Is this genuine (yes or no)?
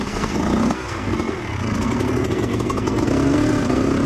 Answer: no